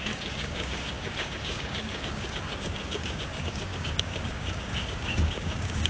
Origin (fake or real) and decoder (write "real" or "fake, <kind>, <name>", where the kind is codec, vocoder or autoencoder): fake, codec, DAC